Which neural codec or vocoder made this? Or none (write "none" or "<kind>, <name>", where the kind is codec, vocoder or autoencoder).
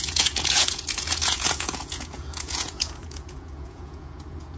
vocoder, Vocos